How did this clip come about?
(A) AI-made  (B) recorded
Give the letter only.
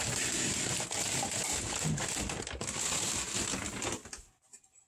B